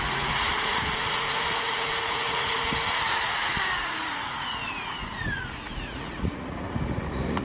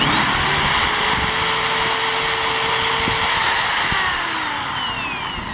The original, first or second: second